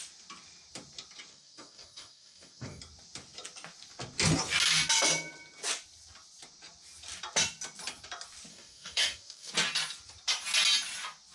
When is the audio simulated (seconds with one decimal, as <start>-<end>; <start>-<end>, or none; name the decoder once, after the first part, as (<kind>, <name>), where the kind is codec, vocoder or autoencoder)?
1.3-2.8 (codec, DAC); 8.5-9.5